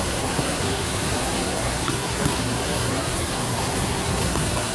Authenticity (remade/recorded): remade